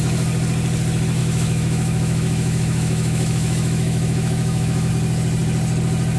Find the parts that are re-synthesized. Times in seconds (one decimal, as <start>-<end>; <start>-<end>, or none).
1.2-4.9